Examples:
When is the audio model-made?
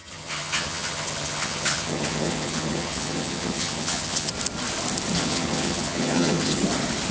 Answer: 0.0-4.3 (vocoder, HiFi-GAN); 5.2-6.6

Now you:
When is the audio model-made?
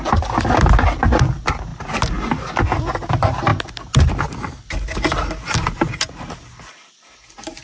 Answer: none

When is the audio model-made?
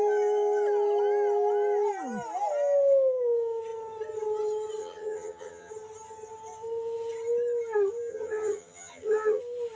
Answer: 4.8-5.7 (vocoder, HiFi-GAN); 8.1-9.4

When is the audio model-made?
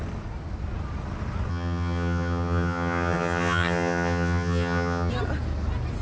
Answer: 1.5-5.1 (vocoder, HiFi-GAN)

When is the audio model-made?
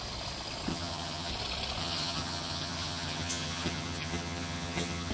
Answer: 0.7-1.3 (vocoder, HiFi-GAN); 1.8-5.1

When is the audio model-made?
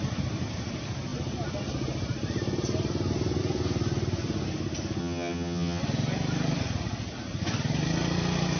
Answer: 5.0-5.8 (vocoder, HiFi-GAN)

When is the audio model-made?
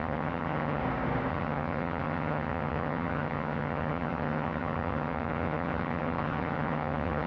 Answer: 0.0-0.8 (vocoder, HiFi-GAN); 1.3-7.3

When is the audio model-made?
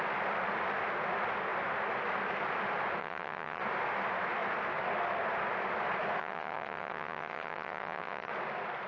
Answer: 3.0-3.6 (vocoder, HiFi-GAN); 6.2-8.3